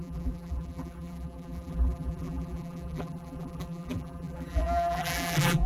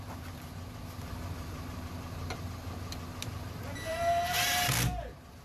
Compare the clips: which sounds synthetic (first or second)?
first